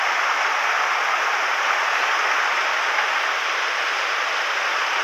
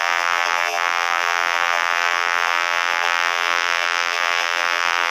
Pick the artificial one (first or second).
second